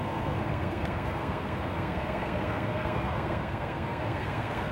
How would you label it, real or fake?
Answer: fake